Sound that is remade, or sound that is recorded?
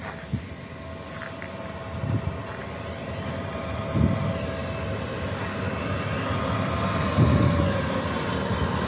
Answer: recorded